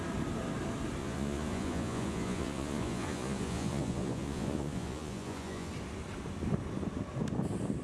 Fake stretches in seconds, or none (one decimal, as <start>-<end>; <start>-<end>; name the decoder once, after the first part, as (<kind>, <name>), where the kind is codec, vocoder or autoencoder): 1.0-5.7 (vocoder, Vocos)